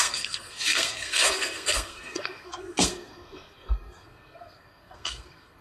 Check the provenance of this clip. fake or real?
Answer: fake